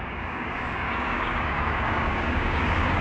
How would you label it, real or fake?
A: fake